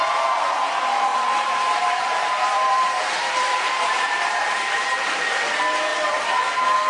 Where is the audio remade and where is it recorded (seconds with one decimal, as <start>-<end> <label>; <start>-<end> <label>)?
0.0-1.1 recorded; 1.1-5.2 remade; 5.2-6.9 recorded